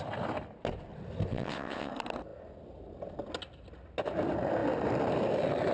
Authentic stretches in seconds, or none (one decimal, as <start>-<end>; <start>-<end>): 0.0-1.3; 1.9-5.7